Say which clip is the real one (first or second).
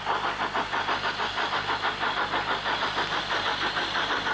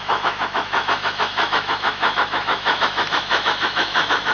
first